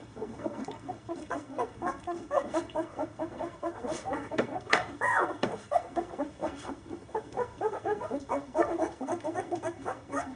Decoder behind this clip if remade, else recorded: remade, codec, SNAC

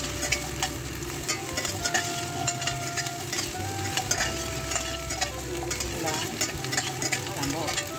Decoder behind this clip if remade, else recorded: recorded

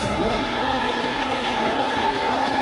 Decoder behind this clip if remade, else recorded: remade, codec, SNAC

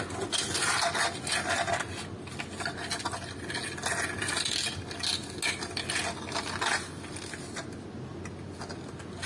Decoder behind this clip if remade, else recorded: recorded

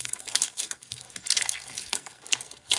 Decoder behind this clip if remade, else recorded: remade, codec, SNAC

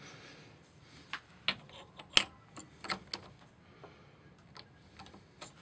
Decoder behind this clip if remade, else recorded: recorded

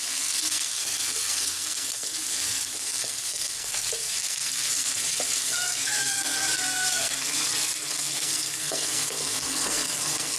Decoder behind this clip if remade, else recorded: remade, codec, SNAC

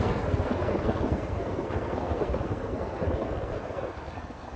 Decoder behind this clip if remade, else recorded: remade, codec, SNAC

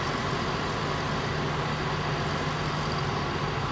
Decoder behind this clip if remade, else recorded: recorded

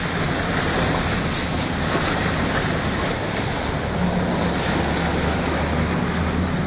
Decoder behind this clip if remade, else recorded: recorded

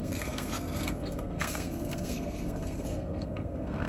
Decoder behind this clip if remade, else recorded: remade, codec, SNAC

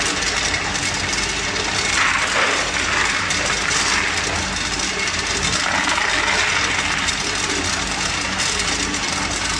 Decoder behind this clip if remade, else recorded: recorded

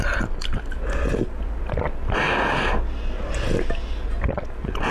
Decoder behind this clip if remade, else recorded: recorded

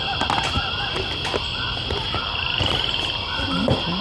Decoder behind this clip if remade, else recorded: recorded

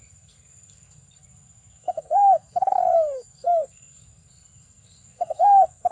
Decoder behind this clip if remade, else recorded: remade, codec, SNAC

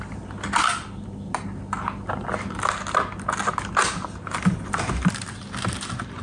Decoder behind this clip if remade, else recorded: recorded